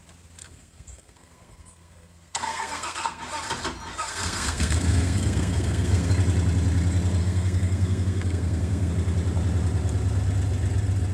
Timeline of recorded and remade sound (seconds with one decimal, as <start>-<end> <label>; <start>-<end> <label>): 0.0-0.4 recorded; 0.4-3.2 remade; 3.2-3.9 recorded; 3.9-6.1 remade; 6.1-7.2 recorded; 7.2-8.9 remade; 8.9-11.1 recorded